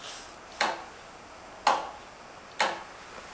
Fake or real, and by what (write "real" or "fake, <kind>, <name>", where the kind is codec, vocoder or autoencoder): real